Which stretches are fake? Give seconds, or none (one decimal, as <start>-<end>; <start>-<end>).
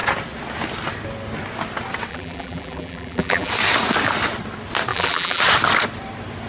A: 2.1-3.5; 4.9-5.4